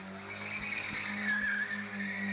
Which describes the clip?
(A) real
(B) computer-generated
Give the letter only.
A